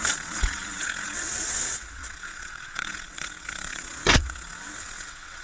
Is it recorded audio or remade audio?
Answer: remade